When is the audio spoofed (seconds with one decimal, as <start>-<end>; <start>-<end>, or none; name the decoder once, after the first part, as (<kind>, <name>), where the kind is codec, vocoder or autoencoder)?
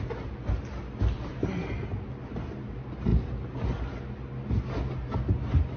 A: none